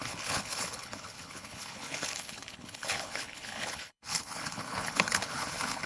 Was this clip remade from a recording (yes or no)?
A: yes